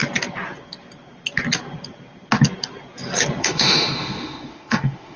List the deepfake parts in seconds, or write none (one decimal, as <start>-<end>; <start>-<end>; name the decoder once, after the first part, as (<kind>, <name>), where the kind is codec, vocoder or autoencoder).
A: 3.4-5.2 (autoencoder, DAC-VAE)